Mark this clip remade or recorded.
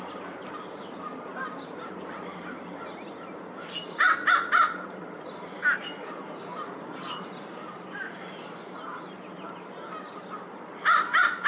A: remade